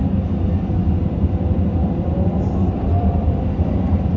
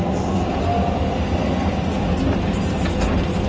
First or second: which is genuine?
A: second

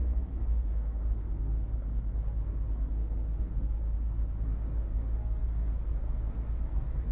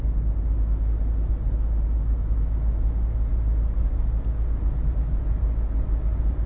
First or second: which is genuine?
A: second